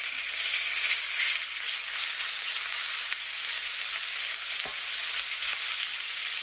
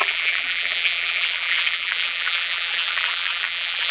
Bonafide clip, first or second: first